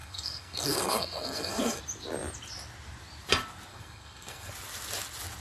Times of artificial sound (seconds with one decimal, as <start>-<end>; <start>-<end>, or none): 0.0-1.8; 3.7-4.5